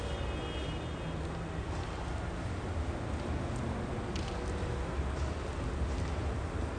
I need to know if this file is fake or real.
real